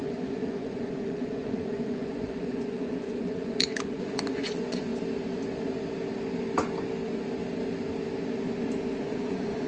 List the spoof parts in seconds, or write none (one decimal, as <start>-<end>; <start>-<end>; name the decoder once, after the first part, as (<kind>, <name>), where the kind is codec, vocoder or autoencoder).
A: 0.0-4.9 (vocoder, Vocos); 9.0-9.7